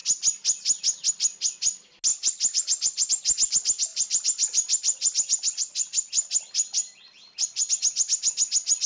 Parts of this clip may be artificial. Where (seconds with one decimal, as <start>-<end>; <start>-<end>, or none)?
2.1-3.1; 3.9-7.7